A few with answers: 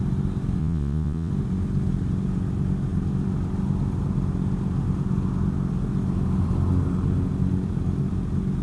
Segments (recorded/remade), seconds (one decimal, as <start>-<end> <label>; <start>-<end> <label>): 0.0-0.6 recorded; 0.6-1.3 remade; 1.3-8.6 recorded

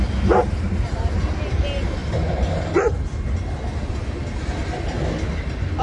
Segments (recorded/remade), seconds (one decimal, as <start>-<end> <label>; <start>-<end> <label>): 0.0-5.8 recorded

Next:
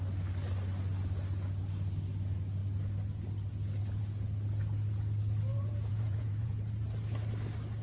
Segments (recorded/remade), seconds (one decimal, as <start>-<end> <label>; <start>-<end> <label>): 0.0-5.5 recorded; 5.5-6.7 remade; 6.7-7.8 recorded

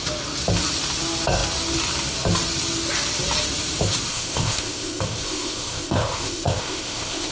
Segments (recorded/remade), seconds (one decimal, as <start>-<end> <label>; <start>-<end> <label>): 0.0-4.1 recorded; 4.1-7.3 remade

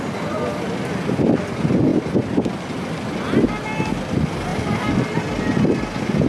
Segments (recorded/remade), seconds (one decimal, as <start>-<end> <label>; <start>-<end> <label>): 0.0-6.3 recorded